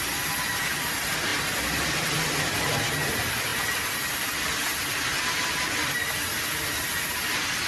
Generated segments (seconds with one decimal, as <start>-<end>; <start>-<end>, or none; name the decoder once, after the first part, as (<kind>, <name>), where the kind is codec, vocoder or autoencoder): none